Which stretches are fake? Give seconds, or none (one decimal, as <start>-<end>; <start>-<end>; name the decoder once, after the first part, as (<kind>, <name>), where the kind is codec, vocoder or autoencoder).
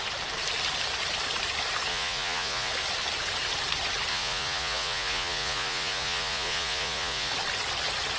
1.9-2.7 (vocoder, Vocos); 4.1-7.3